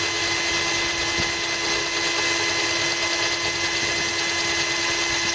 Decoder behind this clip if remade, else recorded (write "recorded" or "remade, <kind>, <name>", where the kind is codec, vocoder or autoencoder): recorded